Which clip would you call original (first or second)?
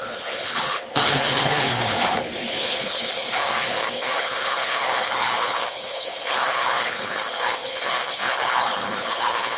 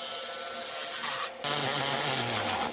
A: second